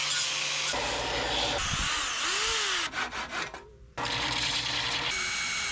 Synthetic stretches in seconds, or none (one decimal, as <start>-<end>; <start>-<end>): 3.7-5.7